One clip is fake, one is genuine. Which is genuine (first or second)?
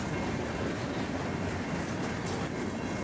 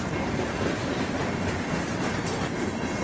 first